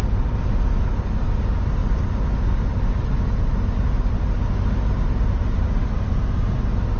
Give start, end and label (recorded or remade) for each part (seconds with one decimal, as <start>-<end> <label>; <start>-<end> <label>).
0.0-7.0 recorded